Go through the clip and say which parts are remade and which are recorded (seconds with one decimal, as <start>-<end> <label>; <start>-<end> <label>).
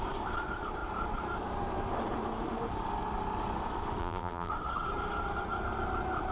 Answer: 0.0-4.0 recorded; 4.0-4.5 remade; 4.5-6.3 recorded